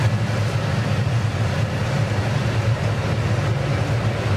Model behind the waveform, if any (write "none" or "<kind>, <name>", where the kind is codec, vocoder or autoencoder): none